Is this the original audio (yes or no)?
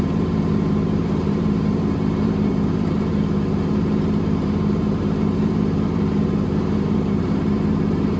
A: no